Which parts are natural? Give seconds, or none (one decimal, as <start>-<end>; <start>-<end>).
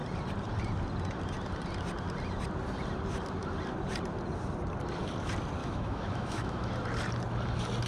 0.0-5.6; 6.7-7.9